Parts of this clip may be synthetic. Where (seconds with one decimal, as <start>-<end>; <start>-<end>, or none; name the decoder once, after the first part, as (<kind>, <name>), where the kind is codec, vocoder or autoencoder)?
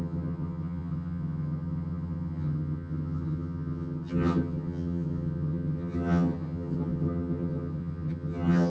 0.0-8.7 (vocoder, HiFi-GAN)